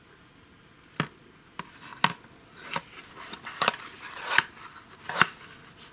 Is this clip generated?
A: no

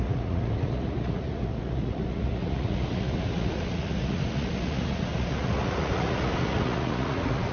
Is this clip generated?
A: yes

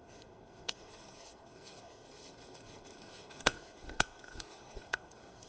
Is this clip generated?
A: yes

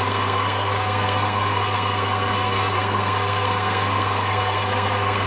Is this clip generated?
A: yes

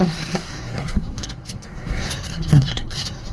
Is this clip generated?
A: yes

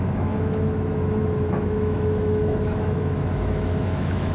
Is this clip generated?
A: yes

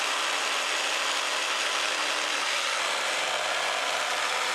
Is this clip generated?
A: no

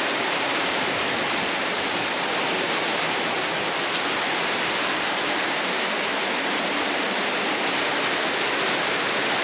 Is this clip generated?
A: no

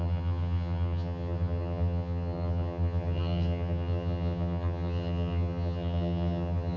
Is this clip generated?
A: yes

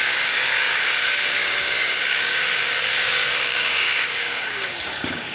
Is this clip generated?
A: yes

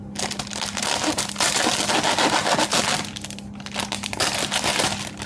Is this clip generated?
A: no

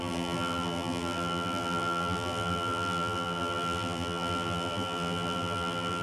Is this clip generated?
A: yes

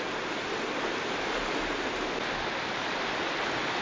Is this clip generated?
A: no